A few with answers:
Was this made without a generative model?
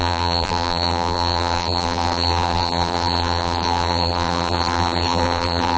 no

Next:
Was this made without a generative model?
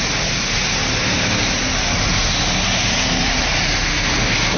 yes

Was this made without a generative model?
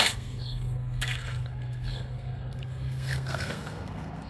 no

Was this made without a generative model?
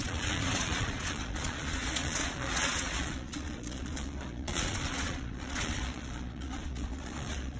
no